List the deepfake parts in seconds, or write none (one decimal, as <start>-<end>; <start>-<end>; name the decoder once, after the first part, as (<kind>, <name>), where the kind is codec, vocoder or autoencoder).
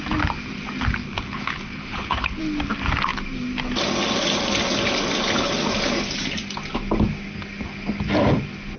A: 1.0-2.4 (codec, HILCodec)